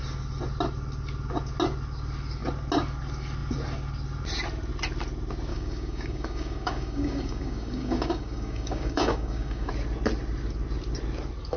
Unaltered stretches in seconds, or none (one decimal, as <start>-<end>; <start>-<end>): 0.0-5.5; 9.7-11.6